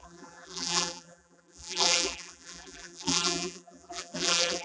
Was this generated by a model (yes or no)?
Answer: yes